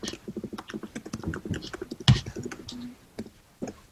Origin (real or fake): real